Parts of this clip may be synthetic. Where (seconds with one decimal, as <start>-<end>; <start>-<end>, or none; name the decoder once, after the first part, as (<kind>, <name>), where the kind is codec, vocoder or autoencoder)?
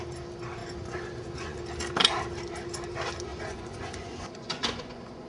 0.6-1.6 (vocoder, Vocos); 3.3-5.3